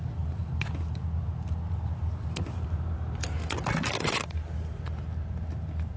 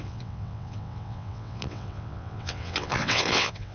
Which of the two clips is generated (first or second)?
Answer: second